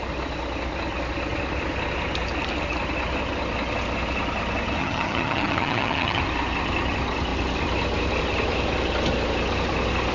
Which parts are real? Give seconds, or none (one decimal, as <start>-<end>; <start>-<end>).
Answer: 0.0-4.8; 6.2-10.1